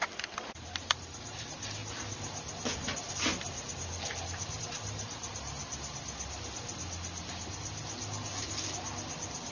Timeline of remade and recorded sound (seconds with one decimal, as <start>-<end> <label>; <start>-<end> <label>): 0.0-1.8 remade; 1.8-4.6 recorded; 4.6-5.6 remade; 5.6-9.5 recorded